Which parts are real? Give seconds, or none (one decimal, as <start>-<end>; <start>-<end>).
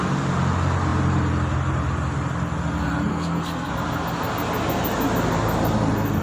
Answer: 0.0-3.1; 3.7-6.2